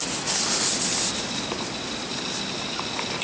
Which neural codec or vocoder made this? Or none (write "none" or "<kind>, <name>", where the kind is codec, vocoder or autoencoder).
none